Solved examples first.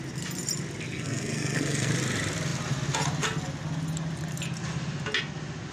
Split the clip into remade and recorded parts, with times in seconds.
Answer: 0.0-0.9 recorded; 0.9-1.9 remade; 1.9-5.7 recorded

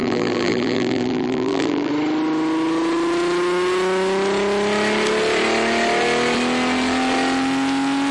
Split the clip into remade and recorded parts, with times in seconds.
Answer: 0.0-1.9 remade; 1.9-8.1 recorded

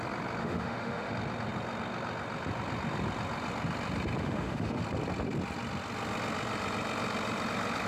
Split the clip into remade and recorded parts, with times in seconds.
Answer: 0.0-0.4 recorded; 0.4-1.1 remade; 1.1-4.2 recorded; 4.2-4.8 remade; 4.8-7.9 recorded

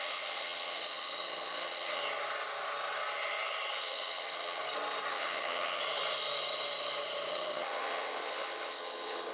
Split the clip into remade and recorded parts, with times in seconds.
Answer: 0.0-2.0 remade; 2.0-3.8 recorded; 3.8-4.6 remade; 4.6-5.1 recorded; 5.1-5.8 remade; 5.8-7.3 recorded; 7.3-9.3 remade

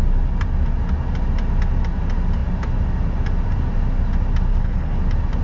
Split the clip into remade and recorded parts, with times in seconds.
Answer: 0.0-4.5 recorded; 4.5-5.0 remade; 5.0-5.4 recorded

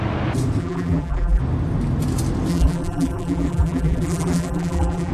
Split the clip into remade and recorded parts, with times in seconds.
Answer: 0.0-0.6 recorded; 0.6-1.4 remade; 1.4-2.5 recorded; 2.5-5.1 remade

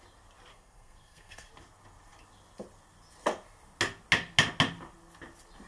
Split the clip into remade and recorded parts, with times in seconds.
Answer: 0.0-0.5 recorded; 0.5-1.5 remade; 1.5-5.7 recorded

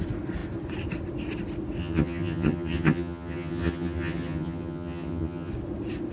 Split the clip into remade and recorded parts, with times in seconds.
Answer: 0.0-1.8 recorded; 1.8-5.5 remade; 5.5-6.1 recorded